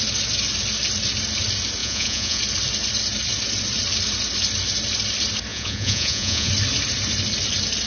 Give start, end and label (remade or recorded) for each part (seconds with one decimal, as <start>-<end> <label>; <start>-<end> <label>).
0.0-1.8 recorded; 1.8-2.4 remade; 2.4-5.5 recorded; 5.5-6.5 remade; 6.5-7.9 recorded